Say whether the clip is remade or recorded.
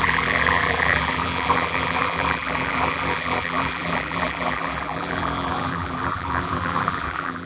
remade